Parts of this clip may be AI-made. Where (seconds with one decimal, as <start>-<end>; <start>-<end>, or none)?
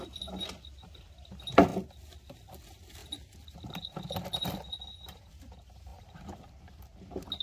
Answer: 5.9-6.8